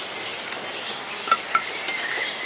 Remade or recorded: recorded